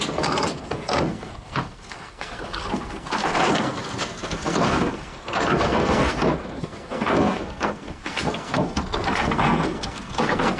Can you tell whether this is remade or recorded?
remade